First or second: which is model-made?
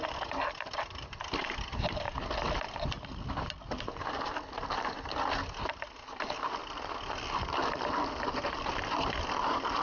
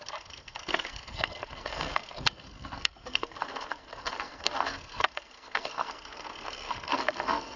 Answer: second